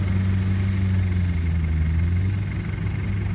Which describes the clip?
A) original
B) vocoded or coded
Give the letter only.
A